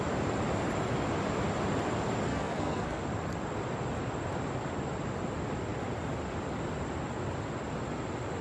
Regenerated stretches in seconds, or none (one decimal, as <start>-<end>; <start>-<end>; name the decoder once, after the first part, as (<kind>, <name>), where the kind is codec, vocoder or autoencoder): 2.3-3.0 (codec, SNAC)